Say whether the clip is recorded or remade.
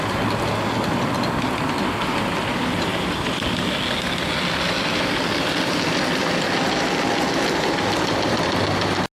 recorded